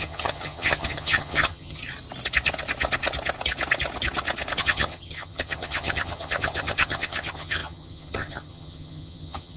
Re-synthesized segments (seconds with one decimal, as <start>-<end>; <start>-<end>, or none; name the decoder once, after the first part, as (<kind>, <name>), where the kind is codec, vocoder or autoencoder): 0.0-1.8 (vocoder, HiFi-GAN); 4.6-9.6